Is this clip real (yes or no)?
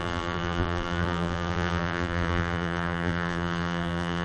no